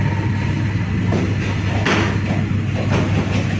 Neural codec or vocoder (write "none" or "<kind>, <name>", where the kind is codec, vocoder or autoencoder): none